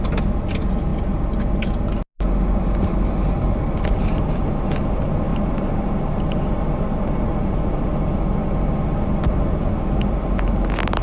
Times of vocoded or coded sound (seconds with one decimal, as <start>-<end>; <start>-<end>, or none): 5.3-5.9